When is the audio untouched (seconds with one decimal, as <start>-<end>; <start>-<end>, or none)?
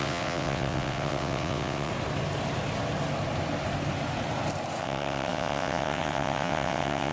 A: 1.9-4.8